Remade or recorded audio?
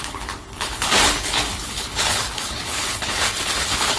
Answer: remade